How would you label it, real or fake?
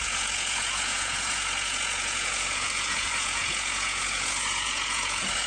fake